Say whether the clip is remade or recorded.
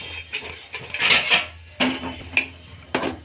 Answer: recorded